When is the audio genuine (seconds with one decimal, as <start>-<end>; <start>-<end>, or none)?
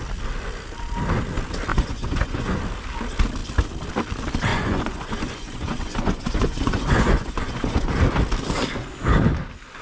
0.0-1.7; 2.6-4.5; 7.9-9.8